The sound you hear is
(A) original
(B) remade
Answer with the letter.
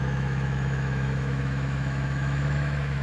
B